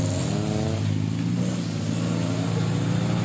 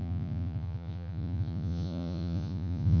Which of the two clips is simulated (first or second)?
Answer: second